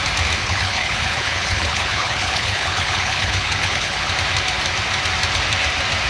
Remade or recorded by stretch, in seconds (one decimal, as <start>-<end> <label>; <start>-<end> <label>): 0.0-0.4 recorded; 0.4-4.1 remade; 4.1-6.1 recorded